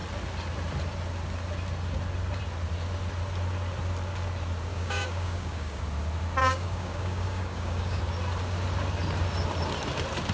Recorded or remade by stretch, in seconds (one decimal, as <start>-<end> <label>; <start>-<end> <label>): 0.0-4.7 recorded; 4.7-5.8 remade; 5.8-6.4 recorded; 6.4-8.0 remade; 8.0-10.3 recorded